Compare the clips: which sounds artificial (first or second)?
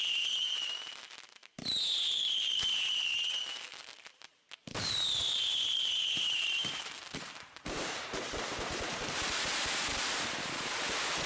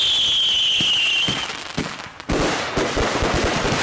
first